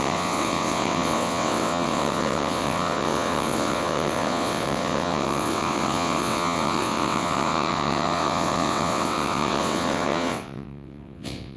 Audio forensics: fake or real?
fake